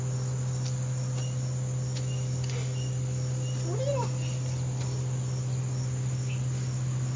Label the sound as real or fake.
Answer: real